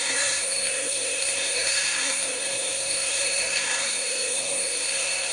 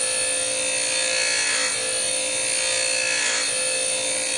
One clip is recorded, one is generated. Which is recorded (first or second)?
second